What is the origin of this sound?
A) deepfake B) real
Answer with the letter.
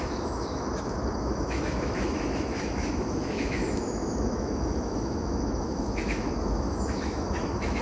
A